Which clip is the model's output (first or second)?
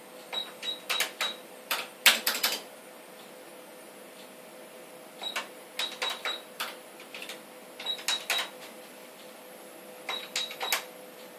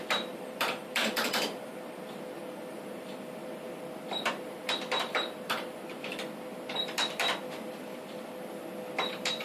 second